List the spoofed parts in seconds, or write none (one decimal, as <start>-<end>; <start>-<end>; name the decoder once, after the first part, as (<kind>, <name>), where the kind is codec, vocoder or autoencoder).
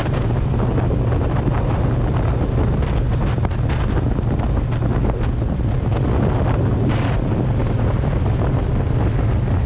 0.0-0.8 (vocoder, BigVGAN v2); 7.6-8.3